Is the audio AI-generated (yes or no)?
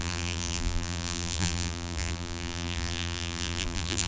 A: yes